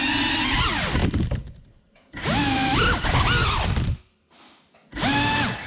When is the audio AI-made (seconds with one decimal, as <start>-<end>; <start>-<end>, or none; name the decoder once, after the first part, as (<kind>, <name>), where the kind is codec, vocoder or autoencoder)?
none